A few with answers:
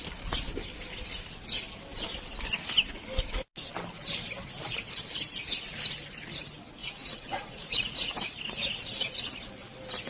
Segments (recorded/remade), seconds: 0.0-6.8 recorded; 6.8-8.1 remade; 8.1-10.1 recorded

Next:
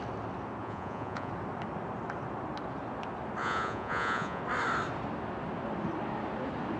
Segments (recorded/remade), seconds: 0.0-0.6 recorded; 0.6-1.3 remade; 1.3-3.4 recorded; 3.4-4.4 remade; 4.4-6.8 recorded

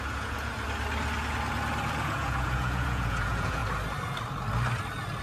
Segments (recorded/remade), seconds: 0.0-0.5 remade; 0.5-2.0 recorded; 2.0-3.6 remade; 3.6-5.2 recorded

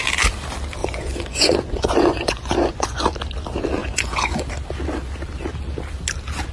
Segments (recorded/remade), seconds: 0.0-0.8 recorded; 0.8-3.0 remade; 3.0-3.8 recorded; 3.8-4.4 remade; 4.4-6.5 recorded

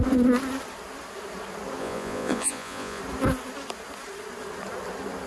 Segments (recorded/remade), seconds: 0.0-1.8 recorded; 1.8-3.0 remade; 3.0-5.3 recorded

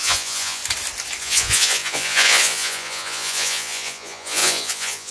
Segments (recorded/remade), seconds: 0.0-0.6 remade; 0.6-1.2 recorded; 1.2-5.1 remade

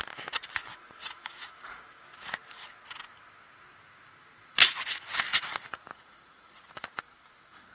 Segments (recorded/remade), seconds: 0.0-0.7 recorded; 0.7-1.8 remade; 1.8-5.3 recorded; 5.3-7.0 remade; 7.0-7.7 recorded